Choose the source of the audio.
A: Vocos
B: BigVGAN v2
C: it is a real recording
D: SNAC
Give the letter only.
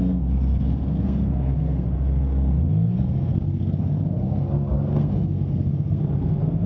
D